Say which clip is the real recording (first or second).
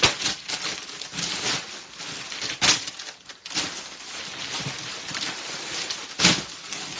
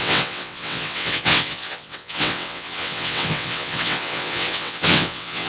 first